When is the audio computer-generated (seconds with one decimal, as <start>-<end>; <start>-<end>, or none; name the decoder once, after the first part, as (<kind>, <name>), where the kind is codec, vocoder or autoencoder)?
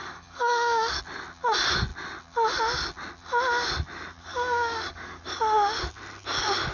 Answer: 0.0-1.0 (codec, DAC); 4.3-5.2